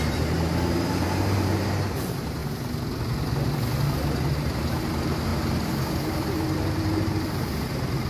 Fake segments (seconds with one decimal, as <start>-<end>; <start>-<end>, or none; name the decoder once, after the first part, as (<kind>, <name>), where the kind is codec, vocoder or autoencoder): 0.0-2.4 (vocoder, BigVGAN v2); 4.4-5.3; 7.3-8.1